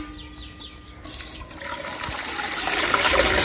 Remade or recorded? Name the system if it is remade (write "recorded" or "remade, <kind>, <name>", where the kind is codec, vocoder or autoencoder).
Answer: recorded